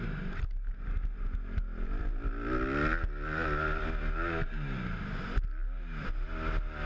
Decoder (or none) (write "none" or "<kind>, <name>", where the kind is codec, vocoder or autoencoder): none